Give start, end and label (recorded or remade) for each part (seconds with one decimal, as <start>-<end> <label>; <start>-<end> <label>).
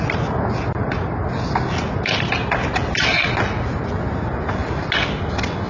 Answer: 0.0-5.7 recorded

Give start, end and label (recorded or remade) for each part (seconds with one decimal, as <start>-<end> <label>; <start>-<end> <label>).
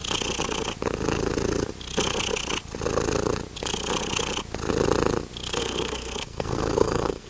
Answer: 0.0-5.6 recorded; 5.6-7.3 remade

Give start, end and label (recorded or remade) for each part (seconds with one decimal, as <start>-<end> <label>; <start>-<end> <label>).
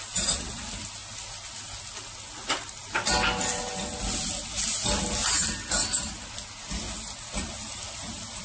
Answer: 0.0-8.4 recorded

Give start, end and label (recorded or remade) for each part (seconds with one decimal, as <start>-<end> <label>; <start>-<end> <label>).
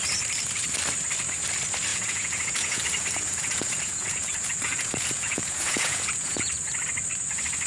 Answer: 0.0-1.9 recorded; 1.9-6.5 remade; 6.5-7.7 recorded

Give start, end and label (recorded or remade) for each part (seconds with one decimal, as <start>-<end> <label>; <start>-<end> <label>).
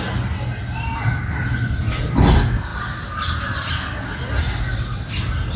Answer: 0.0-5.6 recorded